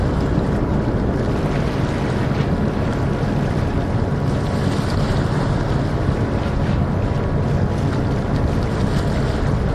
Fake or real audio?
real